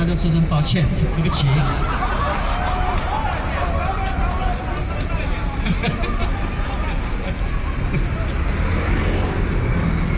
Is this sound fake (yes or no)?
no